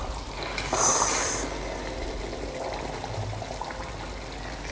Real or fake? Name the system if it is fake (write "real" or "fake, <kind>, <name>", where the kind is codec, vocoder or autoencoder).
real